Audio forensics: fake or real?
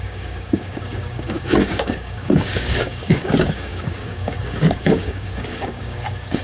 fake